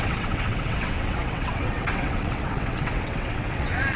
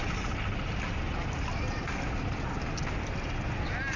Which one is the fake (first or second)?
first